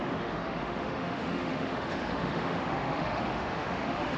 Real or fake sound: fake